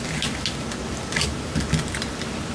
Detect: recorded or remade recorded